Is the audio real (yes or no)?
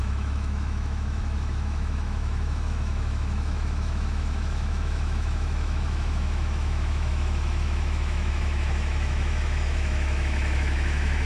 no